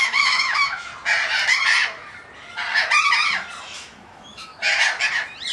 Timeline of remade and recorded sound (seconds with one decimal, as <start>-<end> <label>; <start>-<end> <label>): 0.0-0.9 remade; 0.9-3.6 recorded; 3.6-4.5 remade; 4.5-5.5 recorded